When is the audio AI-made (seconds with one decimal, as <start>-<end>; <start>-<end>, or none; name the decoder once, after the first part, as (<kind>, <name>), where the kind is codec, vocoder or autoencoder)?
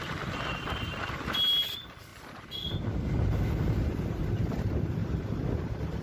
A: 0.0-2.1 (vocoder, BigVGAN v2); 4.5-5.0; 5.6-6.0